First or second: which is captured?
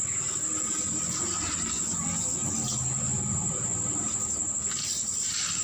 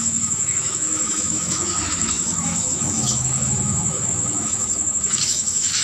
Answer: first